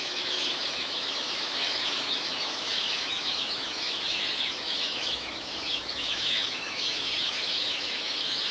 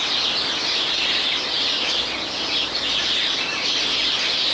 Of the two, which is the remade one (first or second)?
first